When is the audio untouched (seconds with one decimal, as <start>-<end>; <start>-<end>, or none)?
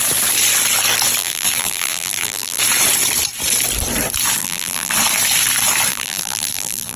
0.0-1.2; 2.6-4.4; 4.9-5.9